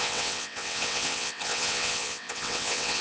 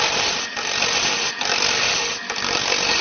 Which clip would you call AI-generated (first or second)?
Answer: first